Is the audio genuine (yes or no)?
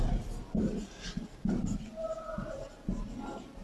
yes